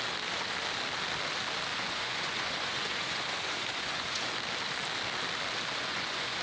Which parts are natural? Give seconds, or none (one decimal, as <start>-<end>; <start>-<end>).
0.0-1.7; 4.3-5.8